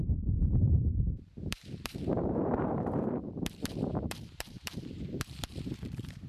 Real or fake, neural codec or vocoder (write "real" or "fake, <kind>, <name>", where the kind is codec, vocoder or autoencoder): fake, vocoder, BigVGAN v2